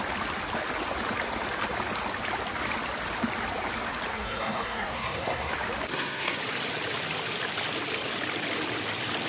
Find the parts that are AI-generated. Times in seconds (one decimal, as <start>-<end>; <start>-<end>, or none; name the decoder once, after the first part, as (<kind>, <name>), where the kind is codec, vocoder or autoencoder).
4.1-5.5 (codec, SNAC); 5.9-6.4

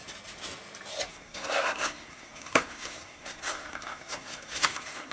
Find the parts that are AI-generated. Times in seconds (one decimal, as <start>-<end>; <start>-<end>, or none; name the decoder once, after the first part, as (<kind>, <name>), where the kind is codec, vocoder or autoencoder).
1.1-5.1 (codec, SNAC)

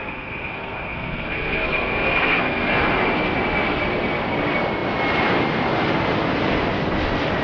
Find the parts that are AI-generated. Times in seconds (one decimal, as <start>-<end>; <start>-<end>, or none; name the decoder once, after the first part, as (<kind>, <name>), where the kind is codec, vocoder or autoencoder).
0.0-2.7 (codec, SNAC)

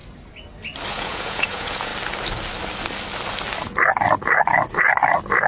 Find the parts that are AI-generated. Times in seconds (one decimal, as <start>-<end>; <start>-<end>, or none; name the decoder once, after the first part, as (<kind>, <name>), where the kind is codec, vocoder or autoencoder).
0.9-1.9 (vocoder, Vocos)

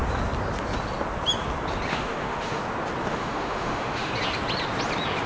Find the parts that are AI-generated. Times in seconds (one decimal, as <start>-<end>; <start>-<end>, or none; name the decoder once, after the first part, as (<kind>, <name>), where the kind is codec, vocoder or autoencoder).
1.9-2.6 (autoencoder, DAC-VAE); 3.1-4.1

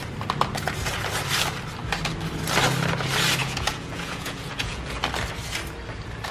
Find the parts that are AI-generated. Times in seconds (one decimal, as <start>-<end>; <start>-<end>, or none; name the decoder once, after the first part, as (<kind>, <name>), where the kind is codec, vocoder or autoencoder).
3.4-5.0 (vocoder, Vocos)